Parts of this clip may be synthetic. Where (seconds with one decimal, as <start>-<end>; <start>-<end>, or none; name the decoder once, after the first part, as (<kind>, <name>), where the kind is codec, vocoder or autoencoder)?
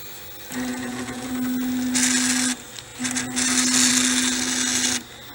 0.7-1.3 (vocoder, Vocos)